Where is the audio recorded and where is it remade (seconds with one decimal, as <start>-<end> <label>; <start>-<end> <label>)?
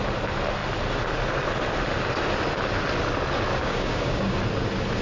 0.0-3.5 recorded; 3.5-4.4 remade; 4.4-5.0 recorded